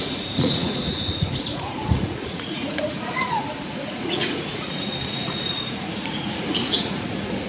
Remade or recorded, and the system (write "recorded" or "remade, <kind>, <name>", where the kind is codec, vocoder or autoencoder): remade, vocoder, Vocos